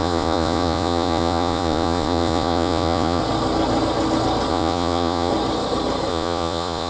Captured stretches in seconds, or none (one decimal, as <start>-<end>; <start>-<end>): 3.2-4.5; 5.3-6.1